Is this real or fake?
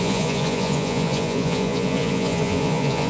fake